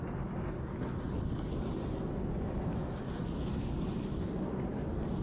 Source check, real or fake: real